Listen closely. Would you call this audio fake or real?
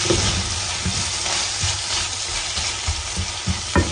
real